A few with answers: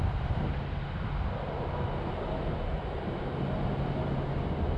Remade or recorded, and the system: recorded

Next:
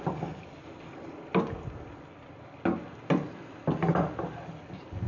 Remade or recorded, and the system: recorded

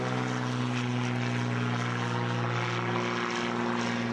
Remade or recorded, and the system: recorded